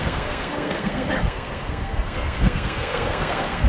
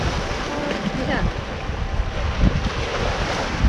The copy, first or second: first